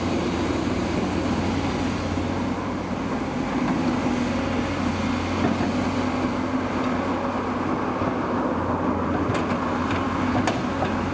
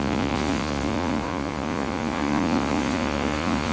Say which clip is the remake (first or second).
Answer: second